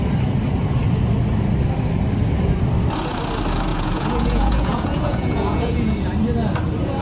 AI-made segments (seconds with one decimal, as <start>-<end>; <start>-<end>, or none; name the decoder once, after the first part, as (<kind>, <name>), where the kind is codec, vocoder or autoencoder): 3.7-5.9 (vocoder, Vocos)